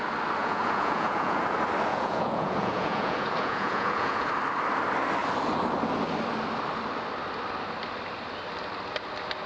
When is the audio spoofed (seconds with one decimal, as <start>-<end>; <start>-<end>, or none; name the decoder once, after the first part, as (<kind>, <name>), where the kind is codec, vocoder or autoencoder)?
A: 0.4-1.4 (vocoder, Vocos); 1.9-4.3